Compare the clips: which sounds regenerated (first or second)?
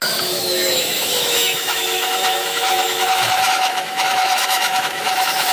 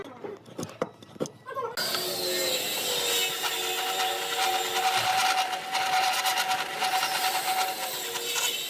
first